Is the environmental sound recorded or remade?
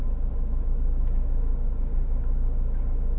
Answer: recorded